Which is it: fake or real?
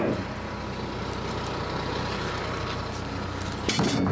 real